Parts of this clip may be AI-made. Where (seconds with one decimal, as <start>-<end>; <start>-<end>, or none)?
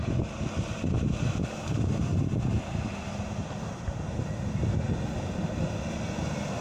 none